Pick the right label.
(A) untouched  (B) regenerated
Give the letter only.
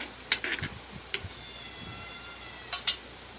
A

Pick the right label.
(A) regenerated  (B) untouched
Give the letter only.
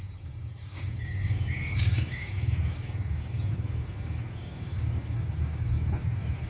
A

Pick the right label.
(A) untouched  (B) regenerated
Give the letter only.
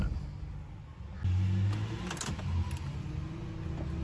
A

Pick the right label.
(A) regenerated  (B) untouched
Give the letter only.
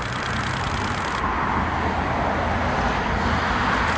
B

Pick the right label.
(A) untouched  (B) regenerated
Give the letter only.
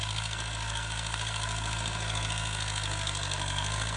B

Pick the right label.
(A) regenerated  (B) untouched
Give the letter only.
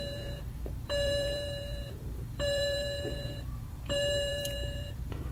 A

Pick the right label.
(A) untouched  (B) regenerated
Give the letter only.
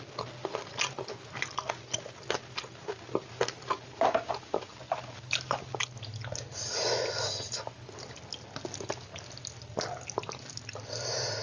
A